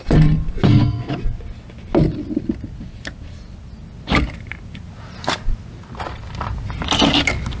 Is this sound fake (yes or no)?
no